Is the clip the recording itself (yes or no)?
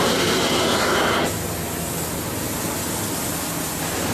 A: yes